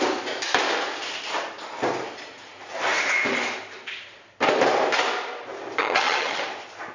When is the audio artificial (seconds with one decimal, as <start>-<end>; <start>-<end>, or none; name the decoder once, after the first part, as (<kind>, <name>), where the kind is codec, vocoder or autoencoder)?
5.8-6.4 (vocoder, HiFi-GAN)